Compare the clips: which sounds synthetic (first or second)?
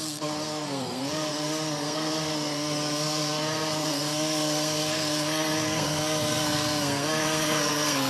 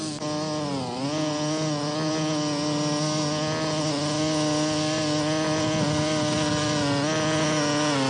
first